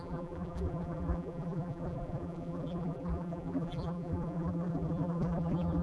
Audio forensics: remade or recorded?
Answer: remade